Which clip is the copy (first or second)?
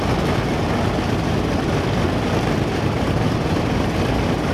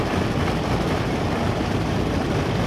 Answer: second